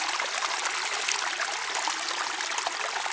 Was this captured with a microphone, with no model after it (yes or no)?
yes